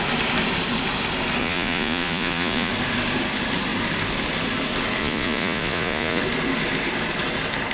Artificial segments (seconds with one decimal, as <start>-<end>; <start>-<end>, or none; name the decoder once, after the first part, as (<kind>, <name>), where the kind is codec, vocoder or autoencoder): 1.4-2.7 (vocoder, Vocos); 5.0-6.2